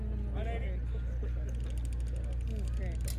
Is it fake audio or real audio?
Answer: real